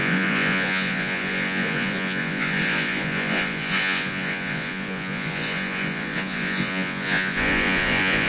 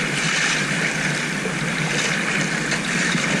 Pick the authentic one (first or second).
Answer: second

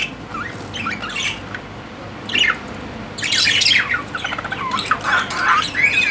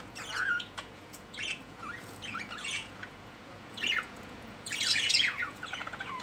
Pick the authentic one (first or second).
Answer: first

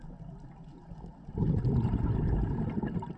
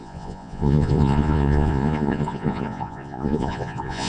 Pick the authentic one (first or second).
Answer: first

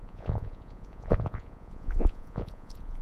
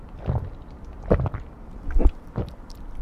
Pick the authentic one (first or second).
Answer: second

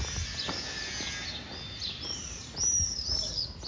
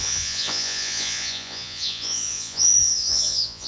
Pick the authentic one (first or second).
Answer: first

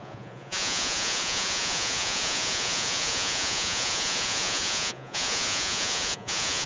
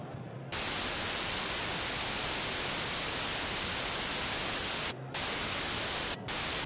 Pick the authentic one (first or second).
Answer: second